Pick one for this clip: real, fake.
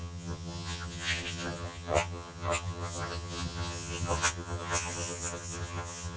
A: fake